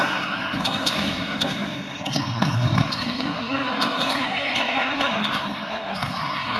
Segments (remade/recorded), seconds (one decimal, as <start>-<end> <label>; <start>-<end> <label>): 0.0-6.6 remade